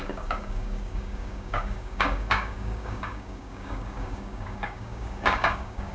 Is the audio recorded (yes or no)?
no